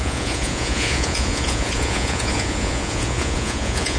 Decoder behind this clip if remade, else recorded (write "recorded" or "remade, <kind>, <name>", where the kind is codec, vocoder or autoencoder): remade, vocoder, Vocos